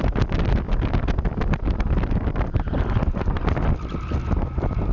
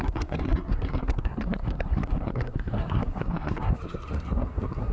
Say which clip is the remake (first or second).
second